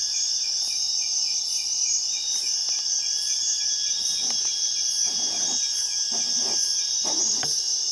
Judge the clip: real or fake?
real